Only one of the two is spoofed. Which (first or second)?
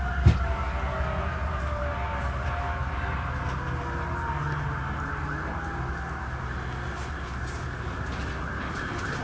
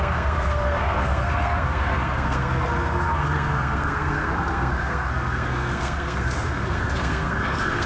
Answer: second